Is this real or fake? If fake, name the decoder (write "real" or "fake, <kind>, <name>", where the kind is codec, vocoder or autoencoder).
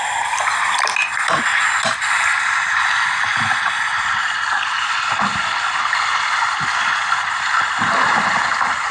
real